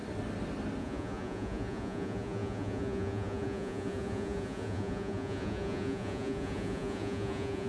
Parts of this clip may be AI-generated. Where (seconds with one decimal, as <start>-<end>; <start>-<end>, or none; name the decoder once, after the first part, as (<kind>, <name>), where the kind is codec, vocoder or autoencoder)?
0.8-7.7 (vocoder, Vocos)

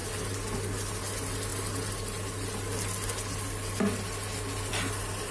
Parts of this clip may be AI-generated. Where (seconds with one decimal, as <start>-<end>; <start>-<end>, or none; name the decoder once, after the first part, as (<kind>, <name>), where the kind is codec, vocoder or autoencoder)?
none

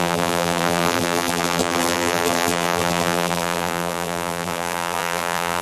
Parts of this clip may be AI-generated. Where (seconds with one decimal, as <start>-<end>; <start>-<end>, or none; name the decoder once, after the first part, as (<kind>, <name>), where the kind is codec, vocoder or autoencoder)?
0.0-5.6 (vocoder, BigVGAN v2)

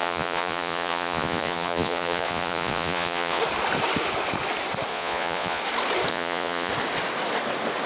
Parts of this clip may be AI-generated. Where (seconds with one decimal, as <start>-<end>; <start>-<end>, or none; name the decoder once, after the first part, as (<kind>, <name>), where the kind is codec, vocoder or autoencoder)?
0.0-3.4 (vocoder, Vocos); 4.9-5.6; 6.1-6.7

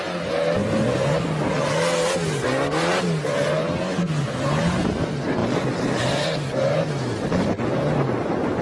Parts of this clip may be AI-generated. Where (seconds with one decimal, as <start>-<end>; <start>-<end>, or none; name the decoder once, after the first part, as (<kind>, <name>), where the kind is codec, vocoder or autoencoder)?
0.6-1.7 (vocoder, BigVGAN v2); 5.4-6.8